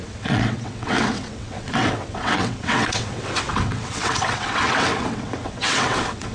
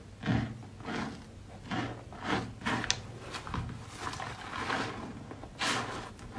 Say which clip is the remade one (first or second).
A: first